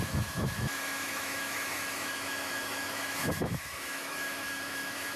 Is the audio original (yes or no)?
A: no